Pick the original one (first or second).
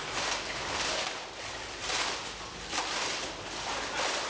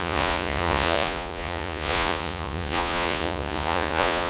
first